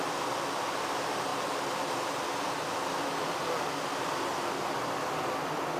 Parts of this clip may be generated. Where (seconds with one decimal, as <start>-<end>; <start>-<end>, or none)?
none

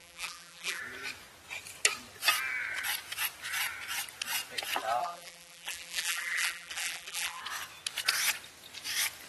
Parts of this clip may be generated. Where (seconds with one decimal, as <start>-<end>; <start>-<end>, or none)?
0.0-0.8; 5.0-7.4

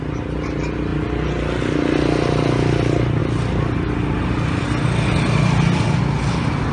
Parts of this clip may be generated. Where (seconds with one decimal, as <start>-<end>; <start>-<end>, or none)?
none

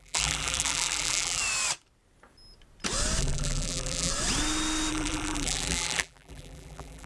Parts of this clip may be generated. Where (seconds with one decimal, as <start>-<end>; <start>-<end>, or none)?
0.0-1.4; 3.2-4.1; 4.9-7.1

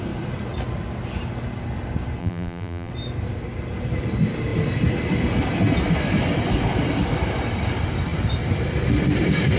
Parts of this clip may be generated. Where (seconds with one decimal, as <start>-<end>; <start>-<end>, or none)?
2.2-2.9

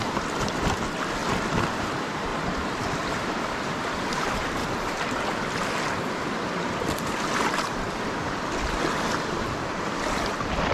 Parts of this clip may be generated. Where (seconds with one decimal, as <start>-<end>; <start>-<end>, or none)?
0.0-1.2; 1.9-10.7

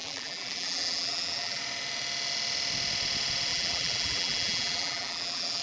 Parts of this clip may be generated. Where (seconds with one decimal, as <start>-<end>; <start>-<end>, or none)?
0.0-1.6; 3.5-5.6

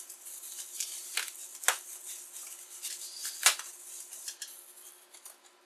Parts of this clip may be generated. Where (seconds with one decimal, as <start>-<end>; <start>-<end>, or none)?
0.5-1.0